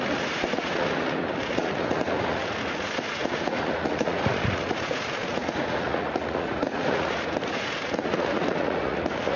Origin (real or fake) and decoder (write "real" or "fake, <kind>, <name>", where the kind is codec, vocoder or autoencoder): fake, vocoder, Vocos